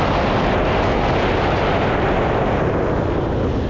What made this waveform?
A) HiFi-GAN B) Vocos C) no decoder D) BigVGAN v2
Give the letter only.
C